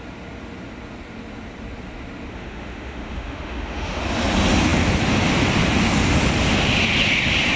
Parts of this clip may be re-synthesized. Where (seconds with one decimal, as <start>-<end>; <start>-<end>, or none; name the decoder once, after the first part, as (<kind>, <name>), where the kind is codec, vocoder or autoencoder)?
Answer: 2.3-4.0 (autoencoder, DAC-VAE)